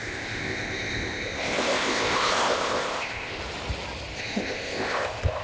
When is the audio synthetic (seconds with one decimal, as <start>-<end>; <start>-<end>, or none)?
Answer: 0.0-3.4; 4.2-5.4